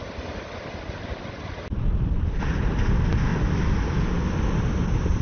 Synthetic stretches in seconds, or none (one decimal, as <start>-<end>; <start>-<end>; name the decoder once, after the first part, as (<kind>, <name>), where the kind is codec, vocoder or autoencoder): none